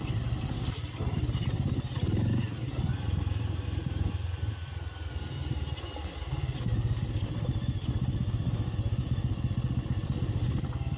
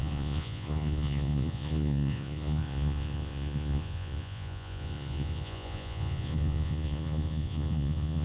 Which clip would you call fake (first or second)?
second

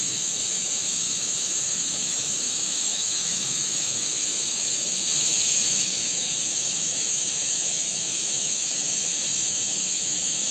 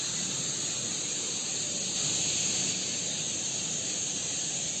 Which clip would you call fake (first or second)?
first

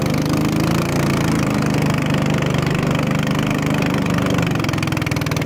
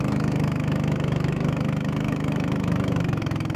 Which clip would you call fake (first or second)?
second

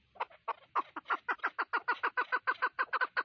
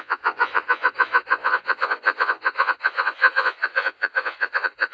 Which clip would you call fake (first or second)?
second